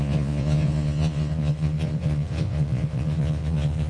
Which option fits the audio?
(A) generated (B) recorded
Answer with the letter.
A